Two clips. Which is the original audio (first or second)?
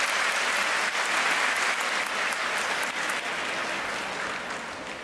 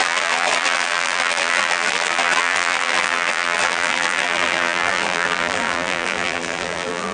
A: first